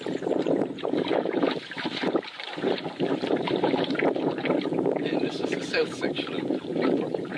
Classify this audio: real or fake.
fake